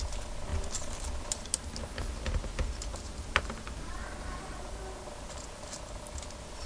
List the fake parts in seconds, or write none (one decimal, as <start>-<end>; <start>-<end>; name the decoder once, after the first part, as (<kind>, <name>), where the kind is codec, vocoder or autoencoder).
2.9-3.4 (vocoder, BigVGAN v2)